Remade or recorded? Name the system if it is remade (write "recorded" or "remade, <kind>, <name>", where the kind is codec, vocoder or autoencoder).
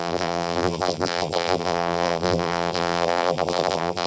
remade, vocoder, BigVGAN v2